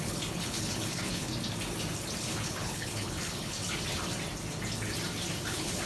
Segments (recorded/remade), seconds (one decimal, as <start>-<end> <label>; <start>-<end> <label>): 0.0-1.3 remade; 1.3-2.2 recorded; 2.2-3.6 remade; 3.6-5.5 recorded; 5.5-5.9 remade